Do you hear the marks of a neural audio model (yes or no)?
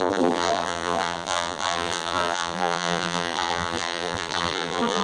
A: yes